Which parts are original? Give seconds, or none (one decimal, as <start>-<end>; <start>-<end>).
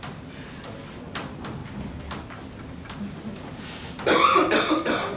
0.0-5.2